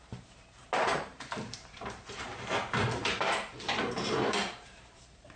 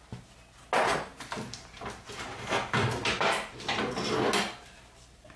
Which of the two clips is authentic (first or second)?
second